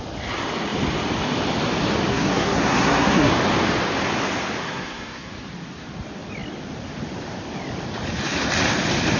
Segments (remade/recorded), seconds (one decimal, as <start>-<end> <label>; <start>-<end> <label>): 0.0-2.1 recorded; 2.1-3.3 remade; 3.3-4.6 recorded; 4.6-5.3 remade; 5.3-9.2 recorded